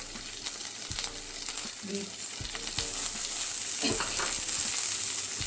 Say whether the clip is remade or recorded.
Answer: recorded